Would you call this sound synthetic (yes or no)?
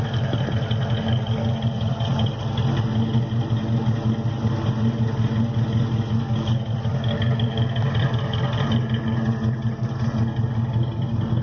no